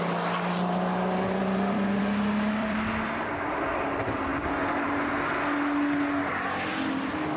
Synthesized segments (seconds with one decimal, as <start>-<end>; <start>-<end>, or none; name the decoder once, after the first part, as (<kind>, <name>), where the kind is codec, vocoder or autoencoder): 1.4-2.0 (vocoder, BigVGAN v2); 2.6-3.6